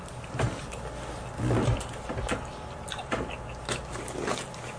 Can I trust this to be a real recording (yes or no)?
yes